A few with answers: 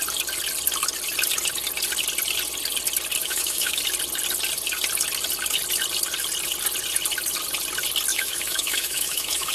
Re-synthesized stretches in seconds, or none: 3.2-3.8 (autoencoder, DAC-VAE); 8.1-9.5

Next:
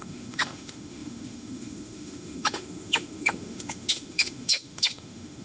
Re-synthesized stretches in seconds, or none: 0.0-5.4 (autoencoder, DAC-VAE)